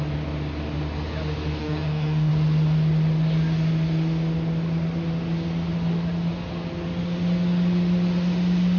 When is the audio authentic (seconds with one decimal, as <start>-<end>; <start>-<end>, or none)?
0.0-1.6; 2.3-8.8